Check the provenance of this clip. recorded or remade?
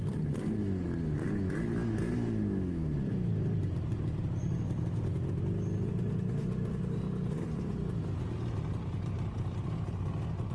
recorded